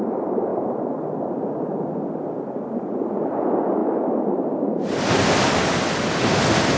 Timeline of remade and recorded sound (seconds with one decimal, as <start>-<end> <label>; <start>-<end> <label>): 0.0-6.8 recorded